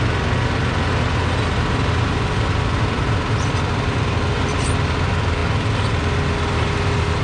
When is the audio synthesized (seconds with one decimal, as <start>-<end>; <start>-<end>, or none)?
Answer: none